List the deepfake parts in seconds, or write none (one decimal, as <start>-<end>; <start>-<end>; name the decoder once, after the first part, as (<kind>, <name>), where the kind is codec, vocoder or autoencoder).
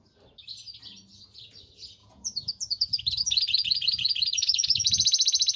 2.0-5.6 (vocoder, Vocos)